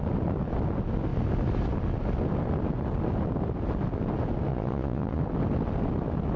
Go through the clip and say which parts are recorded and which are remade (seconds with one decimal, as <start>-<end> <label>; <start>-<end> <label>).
0.0-4.5 recorded; 4.5-5.2 remade; 5.2-6.4 recorded